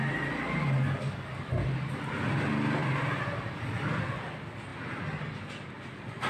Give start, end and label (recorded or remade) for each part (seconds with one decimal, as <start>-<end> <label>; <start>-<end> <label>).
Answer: 0.0-0.6 recorded; 0.6-1.5 remade; 1.5-6.3 recorded